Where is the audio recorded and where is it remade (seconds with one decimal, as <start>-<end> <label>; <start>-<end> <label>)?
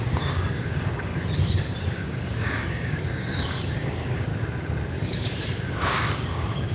0.0-1.1 remade; 1.1-1.8 recorded; 1.8-4.3 remade; 4.3-4.9 recorded; 4.9-6.7 remade